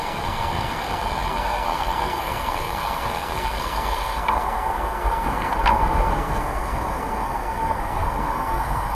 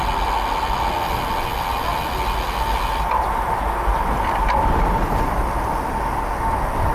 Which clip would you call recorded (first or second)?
second